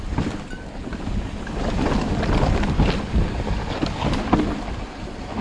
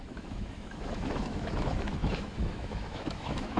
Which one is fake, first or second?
second